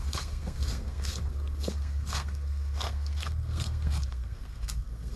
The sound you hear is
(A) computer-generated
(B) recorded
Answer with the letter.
A